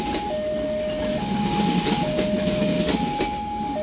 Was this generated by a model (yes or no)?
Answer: no